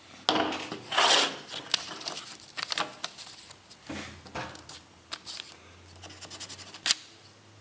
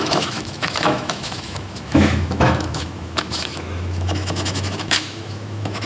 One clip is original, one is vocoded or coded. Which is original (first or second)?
first